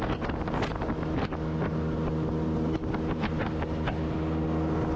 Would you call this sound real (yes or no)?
yes